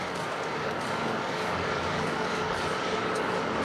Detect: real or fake fake